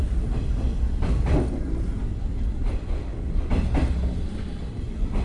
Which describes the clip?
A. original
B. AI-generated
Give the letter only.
A